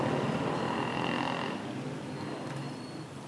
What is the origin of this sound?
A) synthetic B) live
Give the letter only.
B